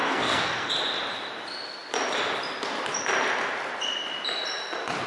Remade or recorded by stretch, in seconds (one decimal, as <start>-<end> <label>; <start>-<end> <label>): 0.0-0.7 remade; 0.7-5.1 recorded